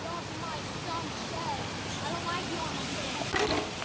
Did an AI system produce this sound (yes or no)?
no